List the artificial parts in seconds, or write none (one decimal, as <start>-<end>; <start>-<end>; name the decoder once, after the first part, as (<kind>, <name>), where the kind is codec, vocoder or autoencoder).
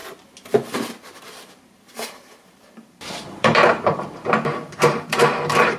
1.2-5.8 (vocoder, BigVGAN v2)